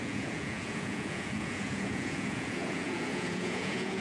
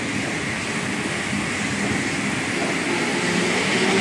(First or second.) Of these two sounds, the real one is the second